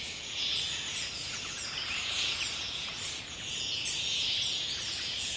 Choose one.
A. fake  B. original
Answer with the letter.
A